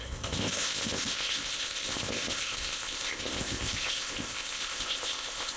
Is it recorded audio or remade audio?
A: remade